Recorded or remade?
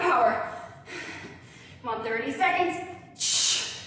remade